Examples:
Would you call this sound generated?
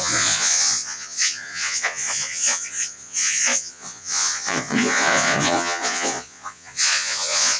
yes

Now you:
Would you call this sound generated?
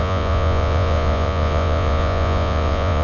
yes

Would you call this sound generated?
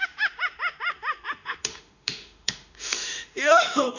yes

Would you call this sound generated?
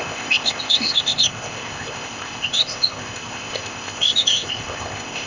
yes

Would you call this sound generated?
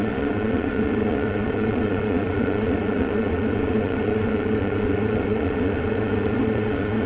yes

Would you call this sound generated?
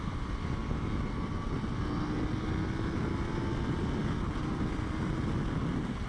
no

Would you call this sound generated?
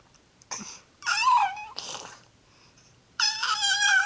yes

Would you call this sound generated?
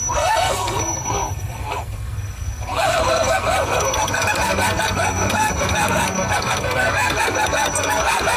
yes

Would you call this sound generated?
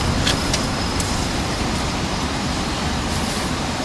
no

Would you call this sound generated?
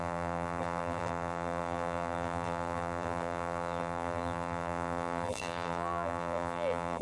yes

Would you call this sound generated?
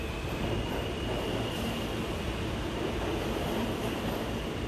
no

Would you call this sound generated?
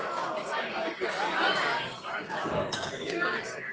yes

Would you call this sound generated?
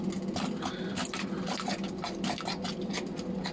no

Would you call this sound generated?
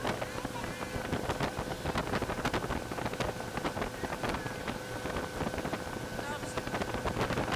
no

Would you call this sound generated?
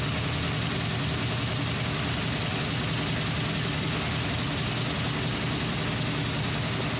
no